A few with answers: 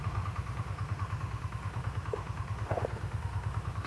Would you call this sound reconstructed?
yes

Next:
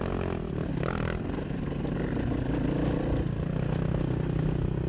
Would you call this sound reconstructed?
no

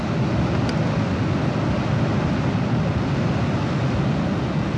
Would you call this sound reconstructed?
no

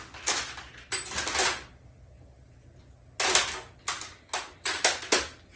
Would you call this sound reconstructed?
no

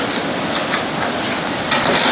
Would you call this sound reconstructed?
no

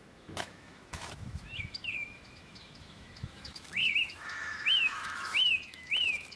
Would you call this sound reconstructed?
yes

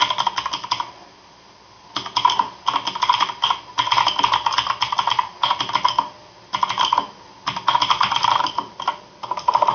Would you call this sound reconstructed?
no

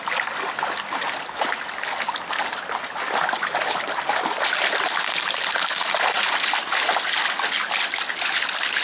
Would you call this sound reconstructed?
no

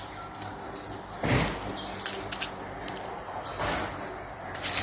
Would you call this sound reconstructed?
no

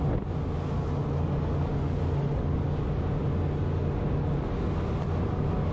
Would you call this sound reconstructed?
no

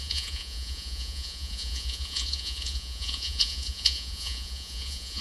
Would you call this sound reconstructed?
yes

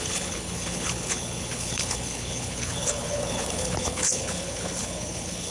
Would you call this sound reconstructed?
yes